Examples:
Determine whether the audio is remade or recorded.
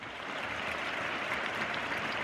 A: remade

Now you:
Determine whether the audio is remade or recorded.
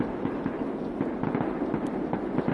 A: recorded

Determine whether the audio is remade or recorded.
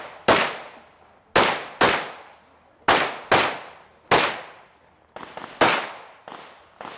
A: recorded